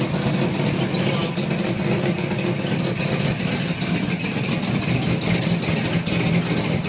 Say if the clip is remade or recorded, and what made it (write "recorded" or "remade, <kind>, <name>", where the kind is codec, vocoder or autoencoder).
recorded